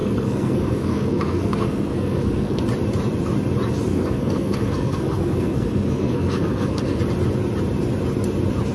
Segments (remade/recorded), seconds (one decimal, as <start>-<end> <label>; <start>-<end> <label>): 0.0-2.6 remade; 2.6-3.9 recorded; 3.9-7.0 remade; 7.0-8.7 recorded